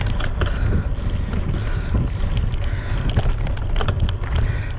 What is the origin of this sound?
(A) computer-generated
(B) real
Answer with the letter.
B